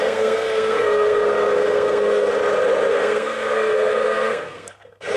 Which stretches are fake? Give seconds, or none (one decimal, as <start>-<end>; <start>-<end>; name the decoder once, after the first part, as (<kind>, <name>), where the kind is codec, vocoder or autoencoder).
0.0-2.3 (codec, SNAC); 2.9-5.2